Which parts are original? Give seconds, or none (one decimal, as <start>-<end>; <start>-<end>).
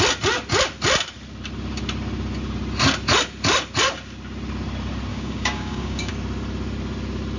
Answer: 0.0-5.1; 6.1-7.4